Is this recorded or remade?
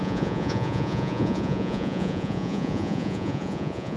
remade